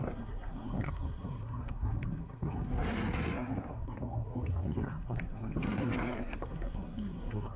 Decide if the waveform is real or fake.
fake